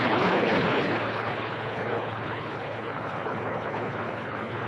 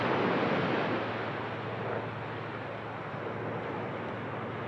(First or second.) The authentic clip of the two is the second